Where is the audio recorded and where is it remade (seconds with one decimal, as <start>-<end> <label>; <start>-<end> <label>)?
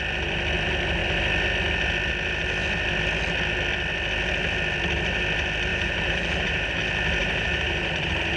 0.0-5.7 recorded; 5.7-6.8 remade; 6.8-7.2 recorded; 7.2-7.8 remade; 7.8-8.4 recorded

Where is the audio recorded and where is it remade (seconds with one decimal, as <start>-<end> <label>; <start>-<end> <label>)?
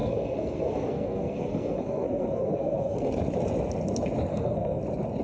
0.0-3.1 remade; 3.1-4.3 recorded; 4.3-4.8 remade; 4.8-5.2 recorded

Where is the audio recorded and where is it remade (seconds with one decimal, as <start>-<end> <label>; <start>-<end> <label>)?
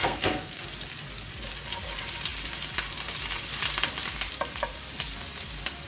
0.0-0.6 remade; 0.6-5.9 recorded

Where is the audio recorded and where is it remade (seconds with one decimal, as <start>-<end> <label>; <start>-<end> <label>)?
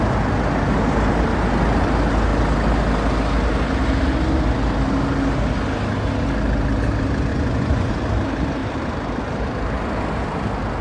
0.0-7.3 recorded; 7.3-7.9 remade; 7.9-10.8 recorded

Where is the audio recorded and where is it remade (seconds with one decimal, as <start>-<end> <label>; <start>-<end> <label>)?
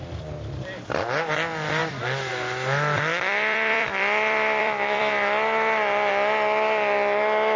0.0-3.1 recorded; 3.1-6.1 remade; 6.1-7.6 recorded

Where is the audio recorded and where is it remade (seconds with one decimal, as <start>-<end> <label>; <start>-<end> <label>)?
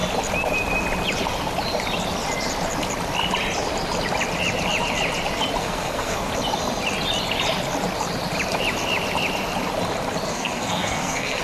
0.0-5.6 recorded; 5.6-6.3 remade; 6.3-10.3 recorded; 10.3-11.4 remade